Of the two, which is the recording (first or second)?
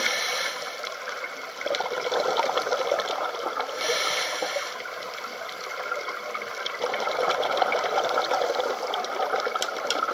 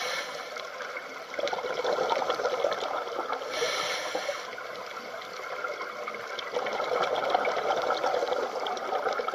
second